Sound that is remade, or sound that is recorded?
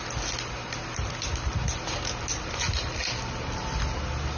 recorded